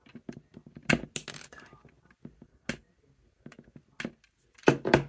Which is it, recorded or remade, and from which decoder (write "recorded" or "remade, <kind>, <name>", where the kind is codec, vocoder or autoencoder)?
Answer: recorded